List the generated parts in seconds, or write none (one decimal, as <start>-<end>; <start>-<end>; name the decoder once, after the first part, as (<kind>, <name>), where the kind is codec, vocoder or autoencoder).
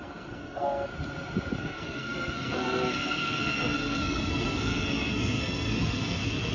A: 0.0-0.9 (codec, SNAC); 1.6-6.5